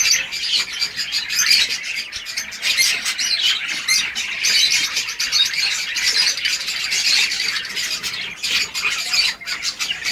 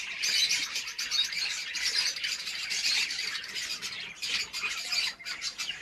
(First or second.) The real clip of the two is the first